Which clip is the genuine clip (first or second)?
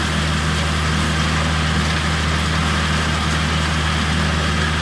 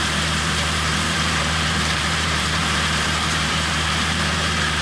first